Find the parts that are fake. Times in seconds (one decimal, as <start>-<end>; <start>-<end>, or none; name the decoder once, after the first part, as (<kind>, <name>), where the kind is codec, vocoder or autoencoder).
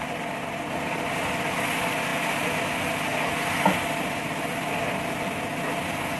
none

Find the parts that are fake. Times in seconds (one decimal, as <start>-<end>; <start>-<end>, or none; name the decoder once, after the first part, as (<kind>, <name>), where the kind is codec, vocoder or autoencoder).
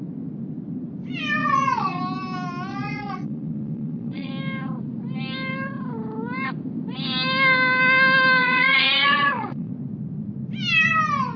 1.4-2.0 (vocoder, Vocos); 2.7-4.3; 8.4-9.7